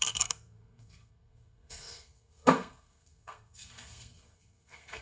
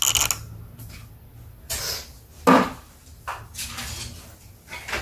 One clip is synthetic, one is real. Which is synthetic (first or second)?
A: first